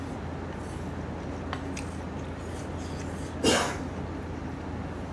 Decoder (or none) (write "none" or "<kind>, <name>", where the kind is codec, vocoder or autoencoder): none